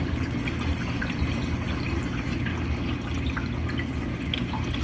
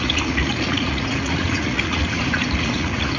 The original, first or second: first